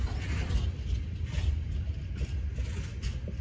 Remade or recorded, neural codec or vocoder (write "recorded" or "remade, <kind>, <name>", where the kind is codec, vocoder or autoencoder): recorded